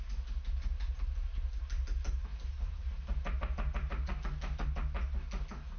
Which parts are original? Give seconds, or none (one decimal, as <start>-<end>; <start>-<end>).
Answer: 0.0-2.3; 2.9-5.8

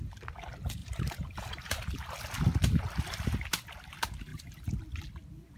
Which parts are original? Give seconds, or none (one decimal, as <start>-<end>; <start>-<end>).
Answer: 0.0-0.8; 1.8-4.3; 4.8-5.6

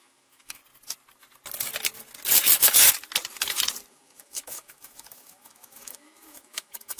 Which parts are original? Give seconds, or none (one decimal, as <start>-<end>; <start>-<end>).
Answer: 0.6-3.9

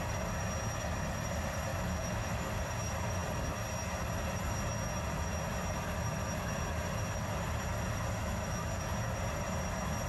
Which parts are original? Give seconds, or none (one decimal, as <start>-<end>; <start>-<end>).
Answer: 0.0-1.7; 2.6-8.2; 8.7-10.1

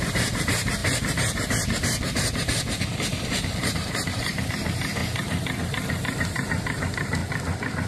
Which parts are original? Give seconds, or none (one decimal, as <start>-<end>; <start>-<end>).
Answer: 5.0-5.6; 7.2-7.9

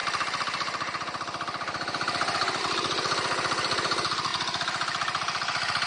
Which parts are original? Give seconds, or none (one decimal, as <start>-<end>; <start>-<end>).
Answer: 0.0-5.9